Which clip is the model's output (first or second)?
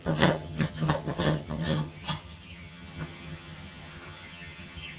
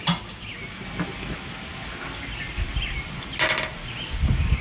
first